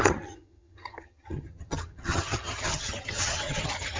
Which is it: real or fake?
fake